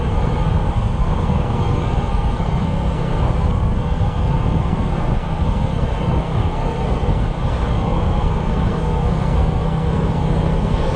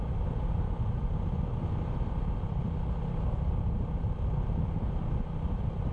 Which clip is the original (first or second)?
second